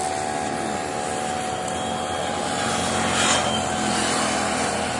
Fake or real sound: real